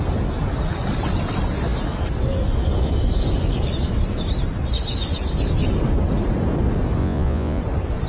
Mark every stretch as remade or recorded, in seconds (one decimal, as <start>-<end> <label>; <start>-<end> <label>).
0.0-7.0 recorded; 7.0-7.6 remade; 7.6-8.1 recorded